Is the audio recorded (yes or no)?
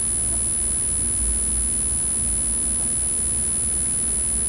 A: yes